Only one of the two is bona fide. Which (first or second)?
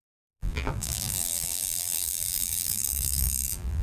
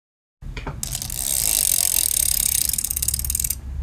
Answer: second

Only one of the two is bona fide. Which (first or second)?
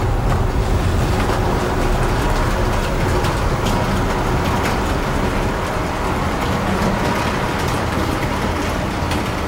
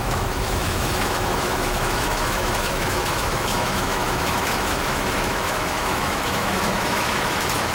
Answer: first